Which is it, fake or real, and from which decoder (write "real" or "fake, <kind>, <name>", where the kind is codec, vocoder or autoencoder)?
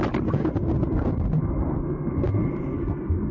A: real